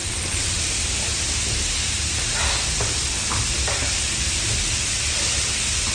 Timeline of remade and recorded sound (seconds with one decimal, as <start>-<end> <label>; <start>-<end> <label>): 0.0-0.6 remade; 0.6-5.9 recorded